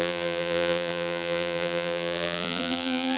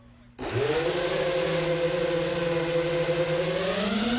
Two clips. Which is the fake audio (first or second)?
first